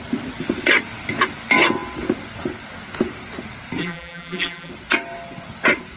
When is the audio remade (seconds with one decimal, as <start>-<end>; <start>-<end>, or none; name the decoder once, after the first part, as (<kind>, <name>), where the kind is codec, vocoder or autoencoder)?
3.8-4.7 (vocoder, BigVGAN v2)